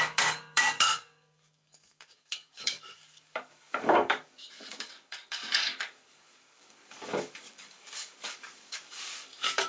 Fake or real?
fake